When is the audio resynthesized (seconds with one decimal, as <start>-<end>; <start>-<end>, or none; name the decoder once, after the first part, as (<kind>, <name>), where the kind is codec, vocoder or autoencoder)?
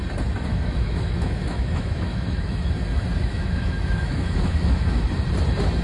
0.5-2.7 (autoencoder, DAC-VAE); 3.2-5.1